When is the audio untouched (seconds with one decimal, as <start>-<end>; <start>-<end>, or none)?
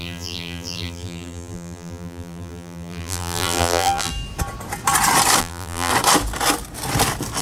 4.1-5.4; 5.9-7.4